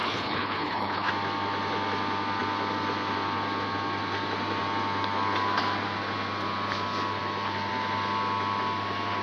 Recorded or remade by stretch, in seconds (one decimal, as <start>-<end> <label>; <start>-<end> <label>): 0.0-1.1 remade; 1.1-9.2 recorded